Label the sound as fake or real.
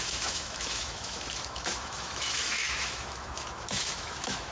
fake